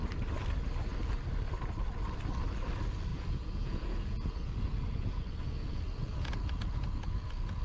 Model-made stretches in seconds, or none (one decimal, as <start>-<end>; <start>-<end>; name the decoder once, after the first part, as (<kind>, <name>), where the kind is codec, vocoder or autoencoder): 3.1-7.6 (vocoder, Vocos)